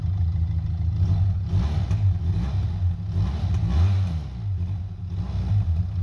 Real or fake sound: real